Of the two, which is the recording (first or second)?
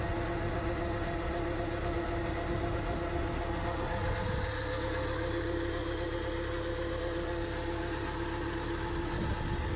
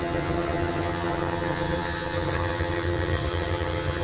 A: first